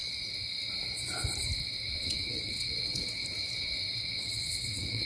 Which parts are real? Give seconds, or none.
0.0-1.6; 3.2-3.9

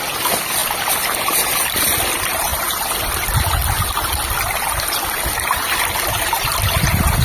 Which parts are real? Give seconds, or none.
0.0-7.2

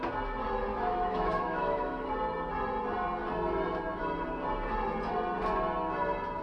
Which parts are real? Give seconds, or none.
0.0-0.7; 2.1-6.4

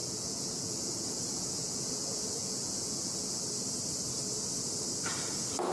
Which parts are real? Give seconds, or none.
3.4-5.7

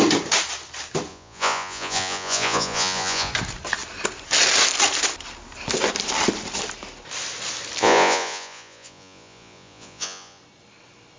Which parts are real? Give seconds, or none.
0.0-1.1; 3.3-7.8; 10.4-11.2

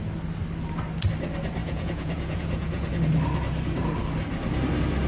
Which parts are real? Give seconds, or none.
0.0-1.6; 2.9-5.1

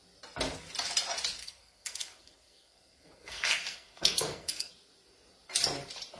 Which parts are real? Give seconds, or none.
0.0-1.4; 4.7-6.2